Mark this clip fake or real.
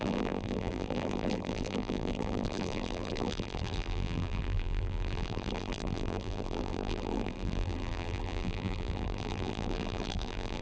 fake